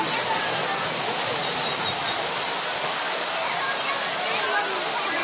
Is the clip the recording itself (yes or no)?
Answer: yes